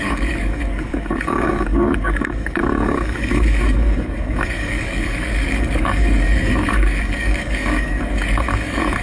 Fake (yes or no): yes